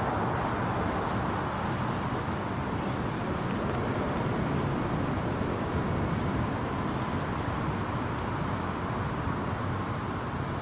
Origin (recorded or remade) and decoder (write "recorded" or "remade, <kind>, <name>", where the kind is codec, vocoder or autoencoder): recorded